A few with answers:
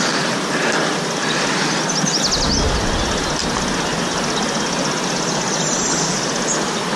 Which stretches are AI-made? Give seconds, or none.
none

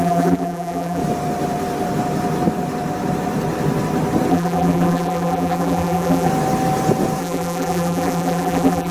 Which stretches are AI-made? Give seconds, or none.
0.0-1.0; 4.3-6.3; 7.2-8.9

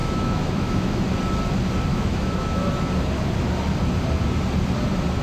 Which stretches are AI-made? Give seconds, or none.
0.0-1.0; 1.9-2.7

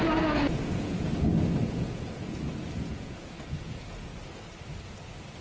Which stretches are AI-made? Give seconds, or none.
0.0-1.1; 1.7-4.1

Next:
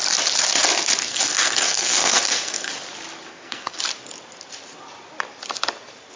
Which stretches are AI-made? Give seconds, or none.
1.0-2.7; 3.3-3.8

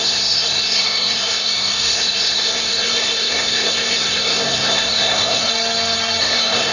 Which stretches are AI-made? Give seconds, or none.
0.0-5.5; 6.2-6.7

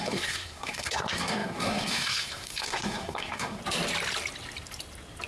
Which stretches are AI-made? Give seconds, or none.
0.0-3.6